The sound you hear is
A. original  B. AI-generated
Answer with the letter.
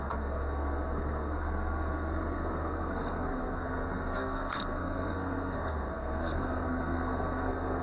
B